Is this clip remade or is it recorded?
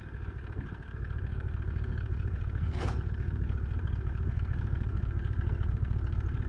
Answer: remade